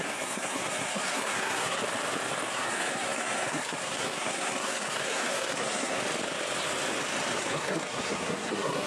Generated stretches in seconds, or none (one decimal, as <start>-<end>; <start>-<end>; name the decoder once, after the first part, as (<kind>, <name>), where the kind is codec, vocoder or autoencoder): 0.0-1.8 (codec, SNAC); 2.5-6.0; 7.4-8.9